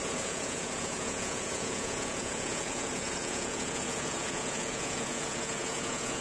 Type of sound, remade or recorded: remade